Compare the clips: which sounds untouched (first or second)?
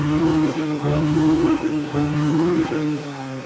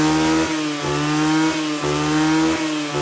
second